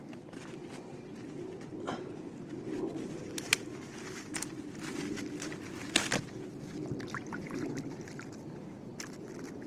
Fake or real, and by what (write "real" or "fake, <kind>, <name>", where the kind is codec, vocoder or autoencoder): real